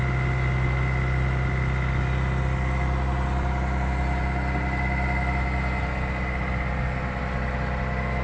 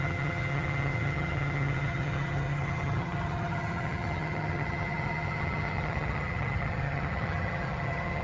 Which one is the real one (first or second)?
first